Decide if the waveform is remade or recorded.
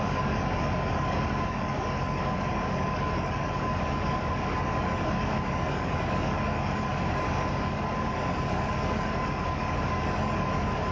remade